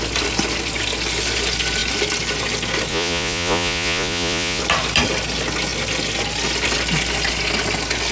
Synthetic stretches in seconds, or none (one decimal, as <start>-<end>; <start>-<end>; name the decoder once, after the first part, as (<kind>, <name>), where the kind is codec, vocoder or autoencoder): 2.9-4.6 (vocoder, Vocos)